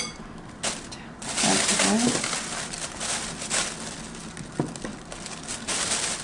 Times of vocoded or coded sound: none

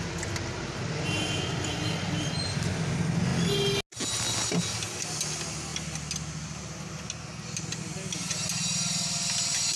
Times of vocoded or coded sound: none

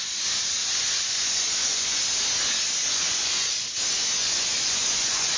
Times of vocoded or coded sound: 0.6-2.0; 2.8-3.7; 4.2-5.4

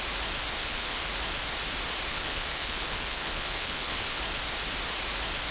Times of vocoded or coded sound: 0.6-1.1; 2.1-4.2

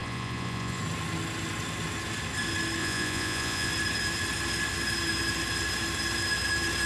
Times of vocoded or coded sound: 0.0-0.8; 2.8-3.7

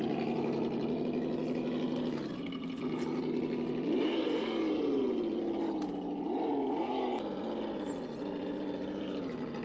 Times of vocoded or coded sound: none